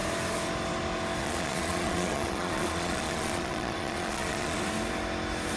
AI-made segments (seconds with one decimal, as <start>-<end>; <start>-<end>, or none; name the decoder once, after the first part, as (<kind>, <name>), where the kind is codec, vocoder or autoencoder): 1.2-4.6 (vocoder, Vocos)